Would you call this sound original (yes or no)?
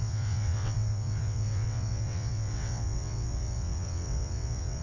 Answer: no